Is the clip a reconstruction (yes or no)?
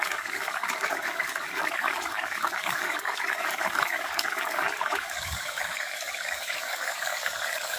yes